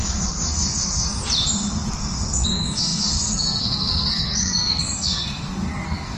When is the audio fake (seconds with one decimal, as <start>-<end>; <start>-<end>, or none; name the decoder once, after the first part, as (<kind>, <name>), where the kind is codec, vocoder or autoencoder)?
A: 0.0-1.2 (codec, SNAC); 2.0-6.2